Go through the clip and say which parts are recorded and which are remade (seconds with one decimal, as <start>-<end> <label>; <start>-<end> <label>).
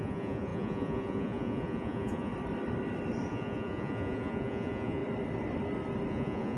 0.0-2.3 remade; 2.3-3.3 recorded; 3.3-5.0 remade; 5.0-6.1 recorded; 6.1-6.6 remade